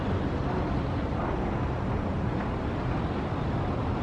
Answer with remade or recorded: recorded